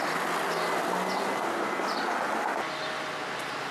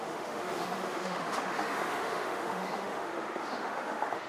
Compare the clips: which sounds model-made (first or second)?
second